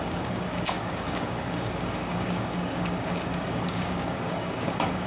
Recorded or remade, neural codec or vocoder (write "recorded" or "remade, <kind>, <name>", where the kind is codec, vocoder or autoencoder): remade, codec, DAC